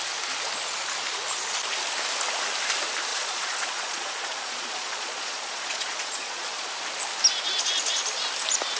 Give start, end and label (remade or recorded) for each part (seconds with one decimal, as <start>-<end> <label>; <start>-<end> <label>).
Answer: 0.0-3.1 recorded; 3.1-6.7 remade; 6.7-8.8 recorded